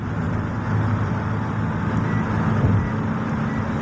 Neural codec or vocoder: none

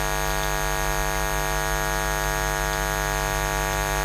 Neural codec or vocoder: none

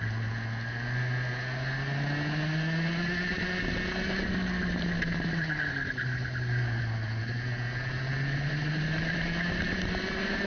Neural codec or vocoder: none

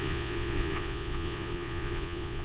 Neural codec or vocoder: vocoder, Vocos